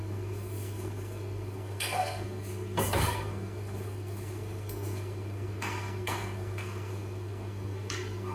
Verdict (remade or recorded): remade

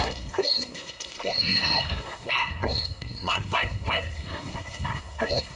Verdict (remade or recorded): remade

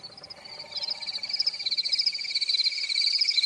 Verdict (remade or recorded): recorded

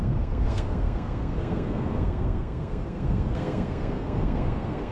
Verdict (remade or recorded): remade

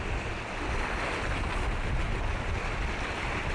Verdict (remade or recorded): recorded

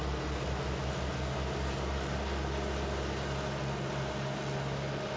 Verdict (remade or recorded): recorded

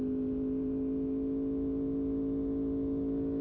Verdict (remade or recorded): recorded